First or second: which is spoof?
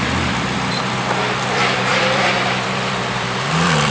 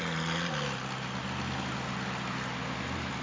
first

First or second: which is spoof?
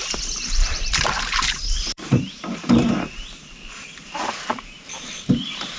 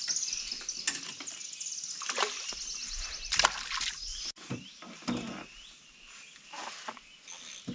first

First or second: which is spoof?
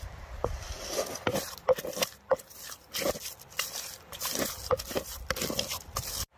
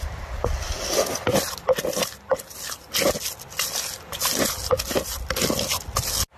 first